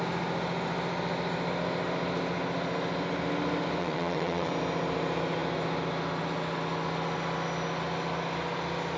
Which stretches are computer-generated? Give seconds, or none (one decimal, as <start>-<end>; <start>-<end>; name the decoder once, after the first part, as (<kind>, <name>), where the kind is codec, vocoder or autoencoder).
3.8-4.5 (vocoder, WaveNeXt)